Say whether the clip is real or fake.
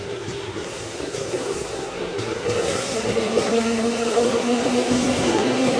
fake